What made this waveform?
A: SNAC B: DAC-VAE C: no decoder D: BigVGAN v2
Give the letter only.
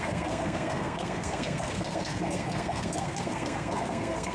A